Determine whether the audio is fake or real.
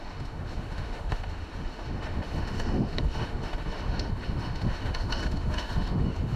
fake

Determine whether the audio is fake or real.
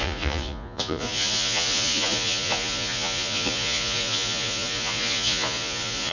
fake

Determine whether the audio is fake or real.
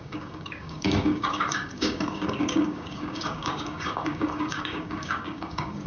fake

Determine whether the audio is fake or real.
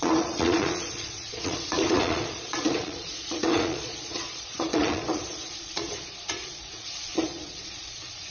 fake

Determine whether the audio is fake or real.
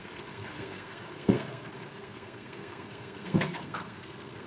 fake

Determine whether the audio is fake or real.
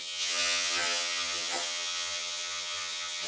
fake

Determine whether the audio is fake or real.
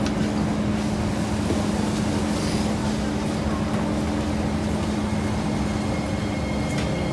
real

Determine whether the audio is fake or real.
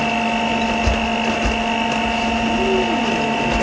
real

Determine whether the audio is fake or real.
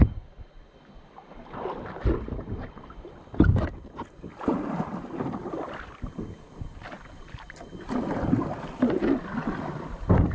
real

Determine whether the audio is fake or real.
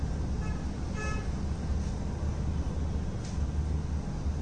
real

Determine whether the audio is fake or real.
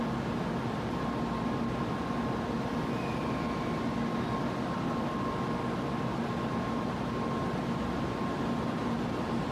real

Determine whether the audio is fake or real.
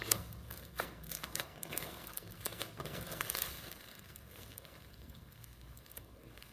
fake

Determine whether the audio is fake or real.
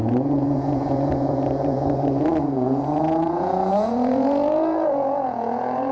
fake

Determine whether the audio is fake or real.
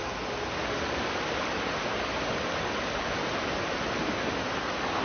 real